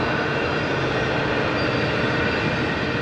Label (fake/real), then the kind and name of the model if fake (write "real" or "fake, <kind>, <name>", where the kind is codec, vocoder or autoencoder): real